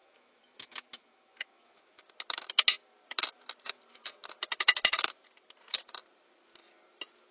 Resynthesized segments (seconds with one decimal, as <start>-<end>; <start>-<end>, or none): 0.0-2.0